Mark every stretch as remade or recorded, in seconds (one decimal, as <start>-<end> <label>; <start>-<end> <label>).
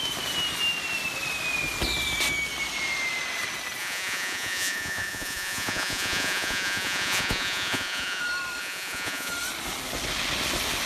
0.0-3.8 recorded; 3.8-8.2 remade; 8.2-8.6 recorded; 8.6-9.3 remade; 9.3-10.9 recorded